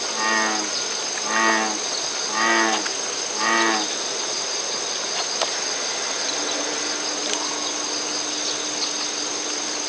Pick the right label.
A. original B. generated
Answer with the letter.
A